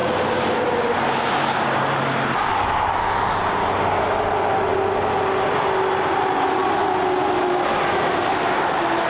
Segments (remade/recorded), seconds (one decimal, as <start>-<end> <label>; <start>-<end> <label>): 0.0-9.1 recorded